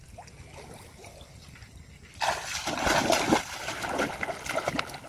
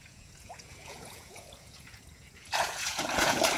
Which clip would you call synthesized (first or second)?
second